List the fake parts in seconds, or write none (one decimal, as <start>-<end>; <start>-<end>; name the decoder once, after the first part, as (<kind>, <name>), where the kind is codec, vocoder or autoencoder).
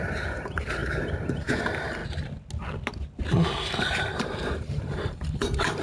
0.0-2.0 (vocoder, BigVGAN v2); 3.8-5.8